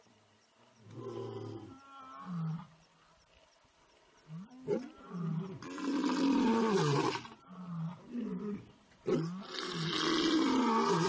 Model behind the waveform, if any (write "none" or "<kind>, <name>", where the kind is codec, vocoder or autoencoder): none